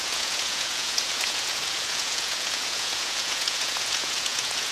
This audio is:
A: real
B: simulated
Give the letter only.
B